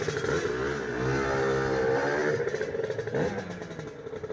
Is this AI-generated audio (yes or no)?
no